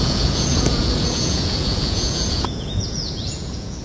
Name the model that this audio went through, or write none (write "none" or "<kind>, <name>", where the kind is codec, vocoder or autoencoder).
vocoder, Vocos